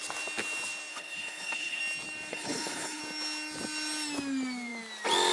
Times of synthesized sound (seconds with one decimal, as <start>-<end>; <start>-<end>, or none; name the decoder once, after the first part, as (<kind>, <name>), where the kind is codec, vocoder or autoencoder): 0.9-1.8 (codec, HILCodec); 2.3-3.0